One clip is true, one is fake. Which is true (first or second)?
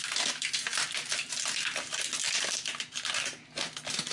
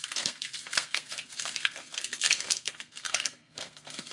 first